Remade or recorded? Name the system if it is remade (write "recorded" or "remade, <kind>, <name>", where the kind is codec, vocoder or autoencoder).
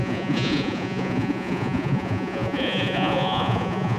remade, vocoder, Vocos